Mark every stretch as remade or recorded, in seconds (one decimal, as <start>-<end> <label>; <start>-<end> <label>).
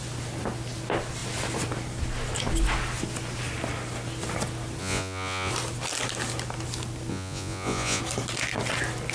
0.0-4.8 recorded; 4.8-5.5 remade; 5.5-7.1 recorded; 7.1-8.0 remade; 8.0-9.1 recorded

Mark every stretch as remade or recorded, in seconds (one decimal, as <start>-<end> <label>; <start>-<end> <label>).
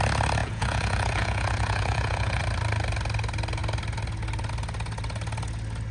0.0-0.4 recorded; 0.4-2.4 remade; 2.4-5.9 recorded